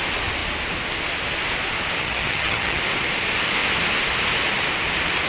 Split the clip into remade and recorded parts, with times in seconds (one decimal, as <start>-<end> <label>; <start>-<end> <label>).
0.0-2.0 recorded; 2.0-2.8 remade; 2.8-5.3 recorded